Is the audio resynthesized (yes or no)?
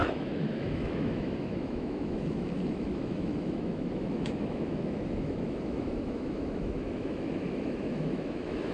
yes